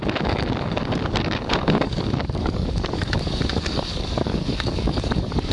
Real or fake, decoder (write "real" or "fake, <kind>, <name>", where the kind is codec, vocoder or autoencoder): fake, codec, DAC